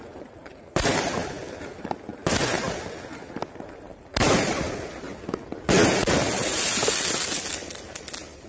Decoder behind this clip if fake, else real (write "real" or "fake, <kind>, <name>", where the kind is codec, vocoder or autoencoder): real